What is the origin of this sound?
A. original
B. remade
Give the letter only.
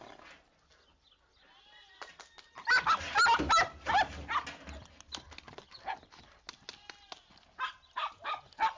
A